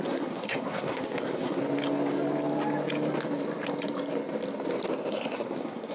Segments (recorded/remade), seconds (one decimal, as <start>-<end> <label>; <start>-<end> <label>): 0.0-1.6 remade; 1.6-5.1 recorded; 5.1-5.9 remade